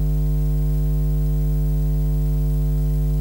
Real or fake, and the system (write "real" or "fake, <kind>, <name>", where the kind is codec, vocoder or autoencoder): real